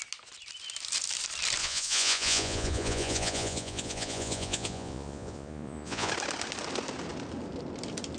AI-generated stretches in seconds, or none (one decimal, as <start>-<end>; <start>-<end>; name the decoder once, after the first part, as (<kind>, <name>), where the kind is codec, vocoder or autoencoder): 1.6-6.1 (vocoder, Vocos)